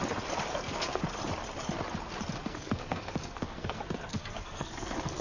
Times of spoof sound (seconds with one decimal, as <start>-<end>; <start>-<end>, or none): 0.5-1.0; 2.4-5.2